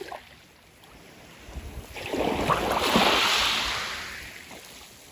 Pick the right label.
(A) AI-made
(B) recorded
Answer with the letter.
B